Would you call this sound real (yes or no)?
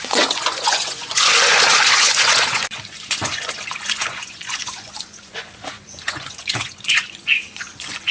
no